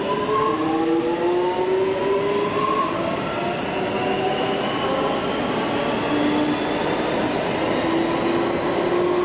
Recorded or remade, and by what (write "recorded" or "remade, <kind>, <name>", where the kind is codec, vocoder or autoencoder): recorded